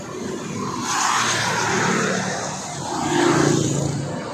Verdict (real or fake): real